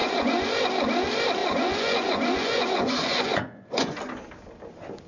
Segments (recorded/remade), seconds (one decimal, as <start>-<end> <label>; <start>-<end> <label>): 0.0-0.5 remade; 0.5-1.4 recorded; 1.4-4.0 remade; 4.0-5.1 recorded